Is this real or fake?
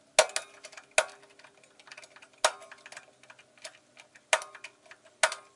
real